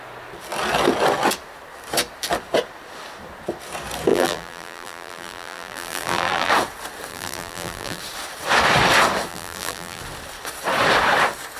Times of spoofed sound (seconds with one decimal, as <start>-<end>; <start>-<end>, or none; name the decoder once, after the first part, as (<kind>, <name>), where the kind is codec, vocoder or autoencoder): 4.1-6.5 (vocoder, BigVGAN v2); 7.1-8.0; 9.3-10.0